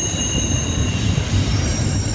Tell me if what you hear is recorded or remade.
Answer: remade